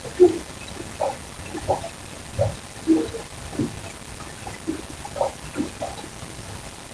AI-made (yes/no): no